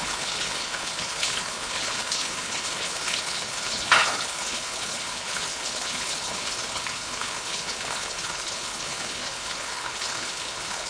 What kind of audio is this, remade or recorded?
remade